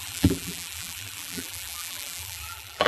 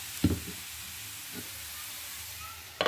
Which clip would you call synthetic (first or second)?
first